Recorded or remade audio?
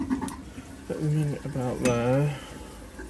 recorded